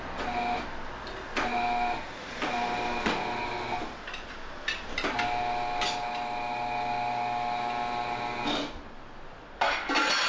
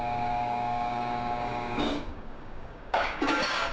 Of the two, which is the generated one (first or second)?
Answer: second